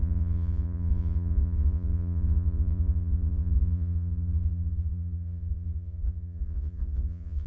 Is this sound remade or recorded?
remade